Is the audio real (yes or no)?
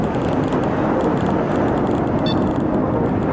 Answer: yes